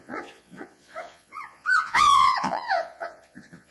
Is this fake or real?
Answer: fake